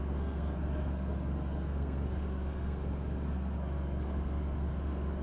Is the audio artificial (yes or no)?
yes